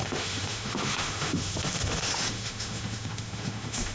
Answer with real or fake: fake